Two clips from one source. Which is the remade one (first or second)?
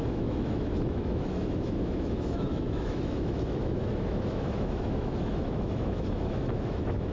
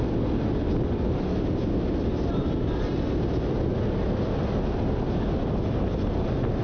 first